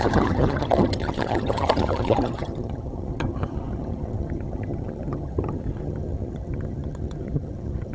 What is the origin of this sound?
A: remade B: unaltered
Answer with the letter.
A